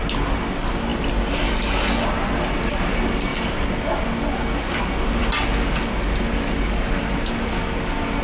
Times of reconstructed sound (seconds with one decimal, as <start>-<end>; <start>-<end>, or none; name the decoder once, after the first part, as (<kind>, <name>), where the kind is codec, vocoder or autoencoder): none